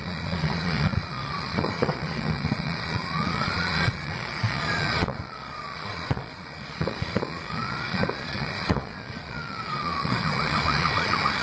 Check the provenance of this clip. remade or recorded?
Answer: remade